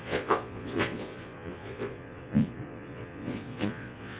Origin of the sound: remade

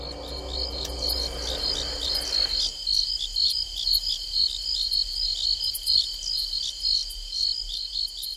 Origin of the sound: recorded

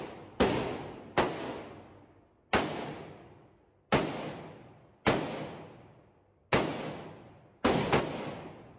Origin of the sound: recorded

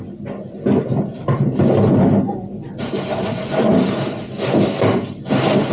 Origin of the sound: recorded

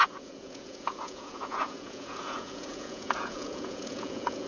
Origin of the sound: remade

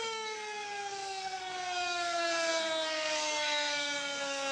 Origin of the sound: remade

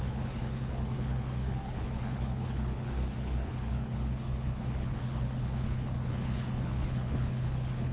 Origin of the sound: remade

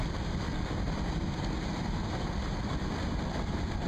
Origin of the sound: remade